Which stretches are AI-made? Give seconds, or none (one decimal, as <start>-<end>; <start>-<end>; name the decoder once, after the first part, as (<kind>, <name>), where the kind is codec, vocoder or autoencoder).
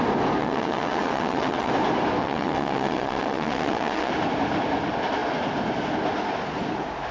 0.4-1.7 (vocoder, WaveNeXt); 2.2-4.1